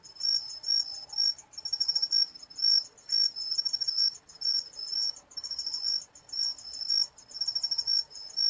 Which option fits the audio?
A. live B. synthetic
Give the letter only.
A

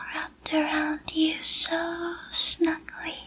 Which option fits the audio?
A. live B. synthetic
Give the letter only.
A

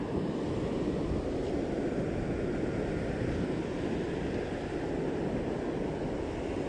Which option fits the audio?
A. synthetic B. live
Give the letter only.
B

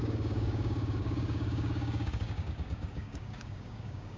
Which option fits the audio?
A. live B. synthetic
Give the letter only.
B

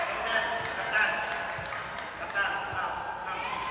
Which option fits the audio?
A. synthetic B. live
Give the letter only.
B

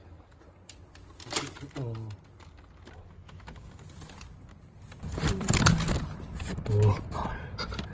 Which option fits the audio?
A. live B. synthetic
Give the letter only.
A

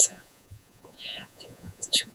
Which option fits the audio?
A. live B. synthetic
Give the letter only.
B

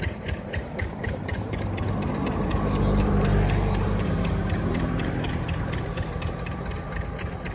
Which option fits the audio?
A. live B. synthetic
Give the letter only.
B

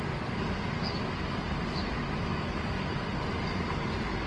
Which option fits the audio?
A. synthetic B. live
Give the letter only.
B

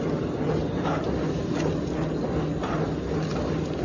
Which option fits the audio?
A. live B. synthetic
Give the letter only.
A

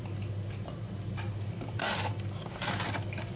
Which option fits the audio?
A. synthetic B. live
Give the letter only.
B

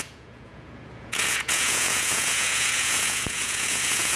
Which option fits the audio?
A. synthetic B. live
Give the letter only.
A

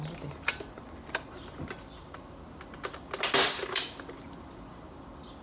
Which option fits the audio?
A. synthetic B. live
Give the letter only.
B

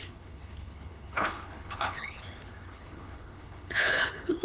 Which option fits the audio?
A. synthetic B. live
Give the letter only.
A